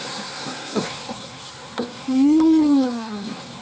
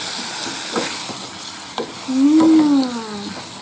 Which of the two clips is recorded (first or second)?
second